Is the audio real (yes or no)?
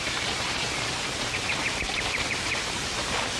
no